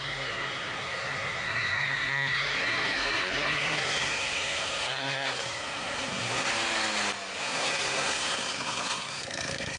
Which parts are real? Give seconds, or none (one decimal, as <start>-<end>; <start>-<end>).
6.5-7.4